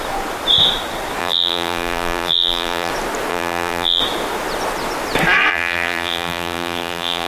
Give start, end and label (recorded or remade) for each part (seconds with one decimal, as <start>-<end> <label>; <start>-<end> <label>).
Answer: 0.0-1.2 recorded; 1.2-2.9 remade; 2.9-3.3 recorded; 3.3-4.0 remade; 4.0-5.5 recorded; 5.5-7.3 remade